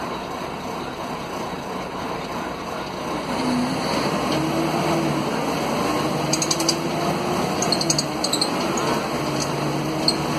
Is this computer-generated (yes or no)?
no